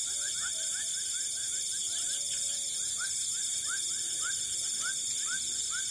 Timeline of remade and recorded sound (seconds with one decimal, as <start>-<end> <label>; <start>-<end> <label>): 0.0-0.9 recorded; 0.9-4.4 remade; 4.4-5.9 recorded